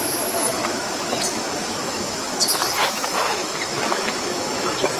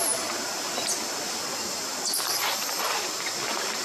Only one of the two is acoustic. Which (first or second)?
second